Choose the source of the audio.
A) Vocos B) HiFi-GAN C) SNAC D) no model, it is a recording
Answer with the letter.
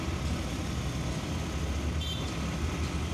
D